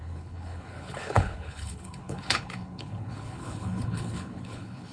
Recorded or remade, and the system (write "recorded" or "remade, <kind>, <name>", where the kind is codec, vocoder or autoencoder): remade, codec, HILCodec